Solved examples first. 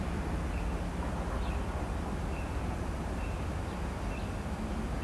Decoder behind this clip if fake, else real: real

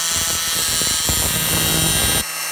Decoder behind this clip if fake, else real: real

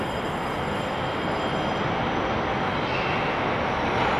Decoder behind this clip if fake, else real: real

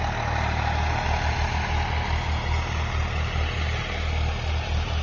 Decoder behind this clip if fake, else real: real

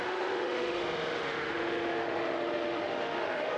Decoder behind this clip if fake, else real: fake, autoencoder, DAC-VAE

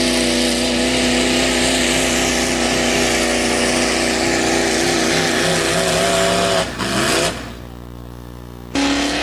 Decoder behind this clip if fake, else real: real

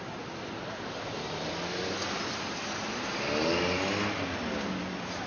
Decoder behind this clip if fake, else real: real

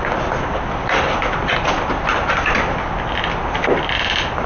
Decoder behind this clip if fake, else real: real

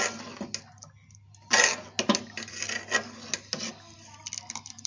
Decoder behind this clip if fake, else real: real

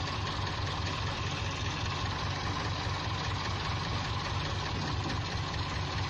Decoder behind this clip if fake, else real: real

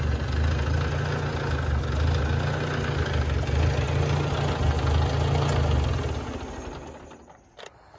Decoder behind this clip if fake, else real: real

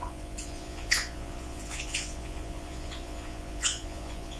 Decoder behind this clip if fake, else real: fake, vocoder, Vocos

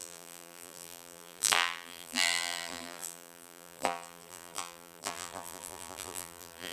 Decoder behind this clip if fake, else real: fake, vocoder, BigVGAN v2